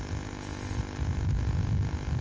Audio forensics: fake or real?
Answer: real